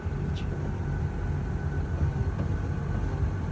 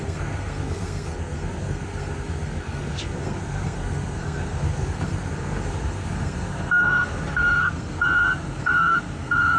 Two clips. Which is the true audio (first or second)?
first